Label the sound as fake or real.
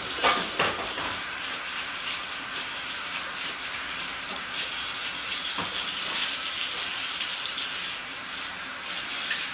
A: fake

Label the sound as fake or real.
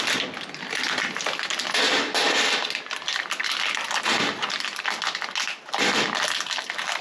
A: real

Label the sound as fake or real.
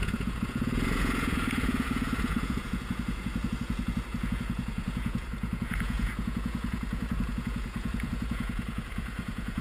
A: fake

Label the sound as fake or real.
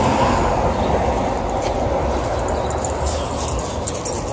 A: real